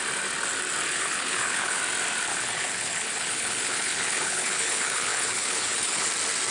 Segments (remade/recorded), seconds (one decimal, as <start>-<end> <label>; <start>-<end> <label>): 0.0-0.9 recorded; 0.9-1.8 remade; 1.8-2.3 recorded; 2.3-6.1 remade; 6.1-6.5 recorded